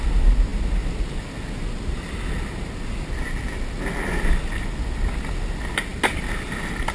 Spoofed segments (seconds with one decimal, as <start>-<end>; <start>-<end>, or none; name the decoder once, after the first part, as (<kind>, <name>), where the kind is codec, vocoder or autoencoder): none